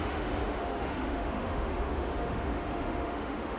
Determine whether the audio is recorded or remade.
remade